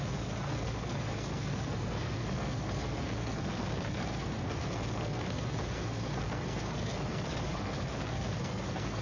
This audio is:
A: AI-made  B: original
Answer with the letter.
A